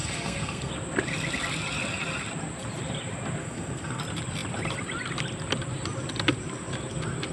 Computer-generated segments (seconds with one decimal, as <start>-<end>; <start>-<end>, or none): 0.0-0.7; 3.4-4.0